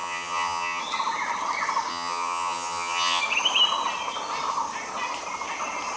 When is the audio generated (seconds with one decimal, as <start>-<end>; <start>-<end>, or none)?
0.0-0.8; 1.9-3.2